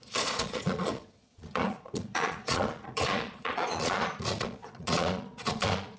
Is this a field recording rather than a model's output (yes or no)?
no